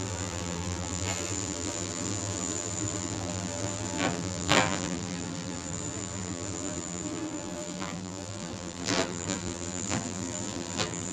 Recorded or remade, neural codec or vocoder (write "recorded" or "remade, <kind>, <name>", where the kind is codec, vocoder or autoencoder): remade, vocoder, BigVGAN v2